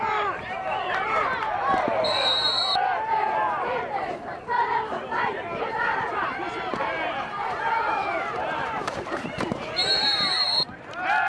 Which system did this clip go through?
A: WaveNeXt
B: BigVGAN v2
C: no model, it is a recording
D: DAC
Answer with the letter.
B